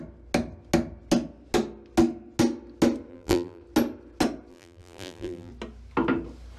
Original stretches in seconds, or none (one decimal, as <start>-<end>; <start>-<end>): 0.0-3.1; 3.6-4.5; 5.5-6.6